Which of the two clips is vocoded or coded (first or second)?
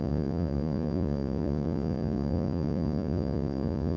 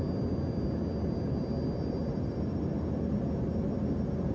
first